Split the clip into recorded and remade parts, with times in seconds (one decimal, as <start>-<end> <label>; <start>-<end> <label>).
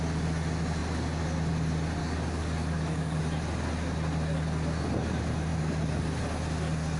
0.0-2.0 recorded; 2.0-3.2 remade; 3.2-7.0 recorded